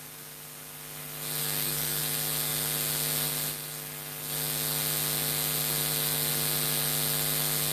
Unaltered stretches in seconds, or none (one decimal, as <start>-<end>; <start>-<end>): 0.0-1.4; 2.0-7.7

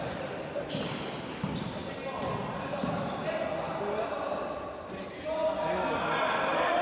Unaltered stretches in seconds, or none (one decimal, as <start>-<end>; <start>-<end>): 0.0-6.8

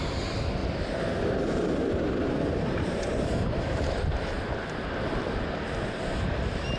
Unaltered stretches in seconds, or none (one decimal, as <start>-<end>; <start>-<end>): 0.0-0.6; 4.7-6.8

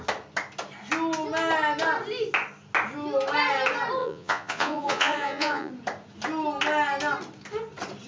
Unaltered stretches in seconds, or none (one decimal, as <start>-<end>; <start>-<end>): 0.0-4.0; 5.7-8.1